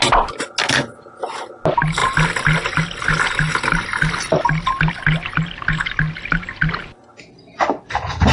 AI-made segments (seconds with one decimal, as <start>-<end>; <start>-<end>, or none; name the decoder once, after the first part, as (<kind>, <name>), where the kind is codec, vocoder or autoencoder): none